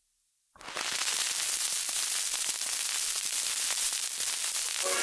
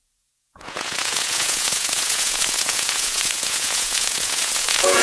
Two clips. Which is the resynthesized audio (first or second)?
second